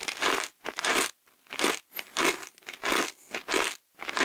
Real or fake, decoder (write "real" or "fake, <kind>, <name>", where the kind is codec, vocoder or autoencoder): real